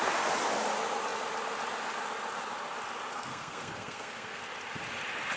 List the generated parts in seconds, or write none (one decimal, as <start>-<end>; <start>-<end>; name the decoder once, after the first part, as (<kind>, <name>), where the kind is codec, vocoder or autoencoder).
3.1-4.4 (codec, SNAC)